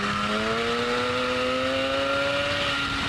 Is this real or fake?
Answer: real